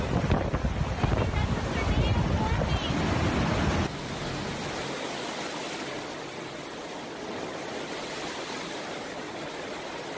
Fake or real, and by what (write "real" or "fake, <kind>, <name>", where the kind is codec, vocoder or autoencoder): real